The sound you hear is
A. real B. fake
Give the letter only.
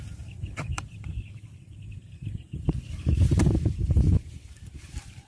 B